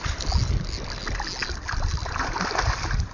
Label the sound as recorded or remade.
recorded